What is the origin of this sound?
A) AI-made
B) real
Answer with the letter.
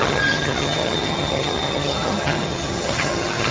A